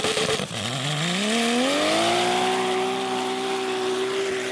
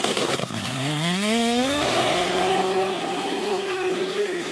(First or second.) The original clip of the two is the first